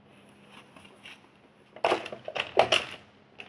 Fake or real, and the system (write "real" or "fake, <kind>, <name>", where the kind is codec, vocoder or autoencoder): real